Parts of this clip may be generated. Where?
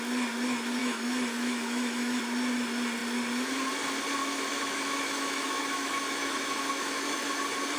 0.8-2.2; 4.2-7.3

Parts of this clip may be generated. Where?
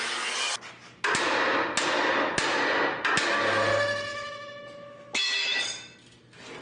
4.1-5.6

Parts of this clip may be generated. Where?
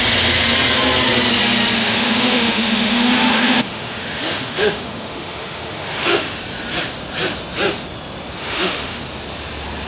1.8-6.4; 8.4-9.0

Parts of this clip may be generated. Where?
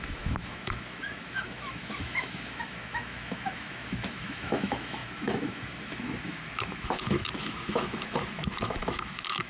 0.0-9.5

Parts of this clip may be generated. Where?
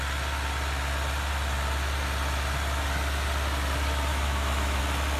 4.1-4.8